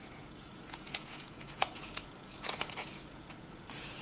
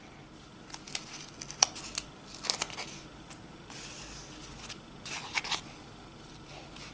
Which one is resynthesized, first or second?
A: first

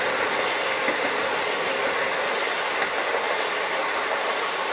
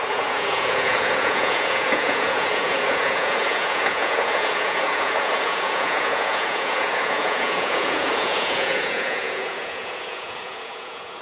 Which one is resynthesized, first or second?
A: second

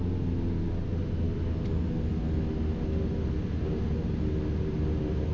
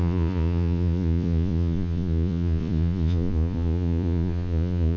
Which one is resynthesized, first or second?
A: second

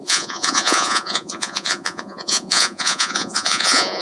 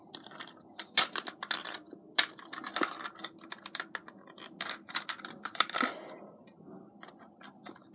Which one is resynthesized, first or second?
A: first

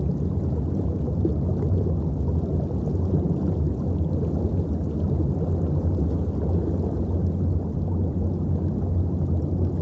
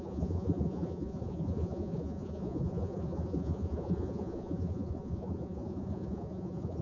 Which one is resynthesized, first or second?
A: second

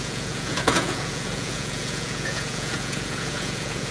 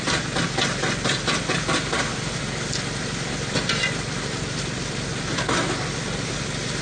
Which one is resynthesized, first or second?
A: first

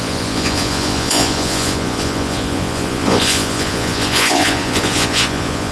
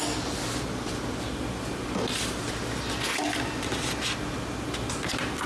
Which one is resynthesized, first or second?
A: first